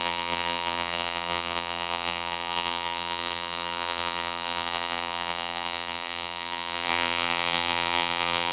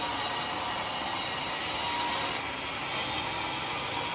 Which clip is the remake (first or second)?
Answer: first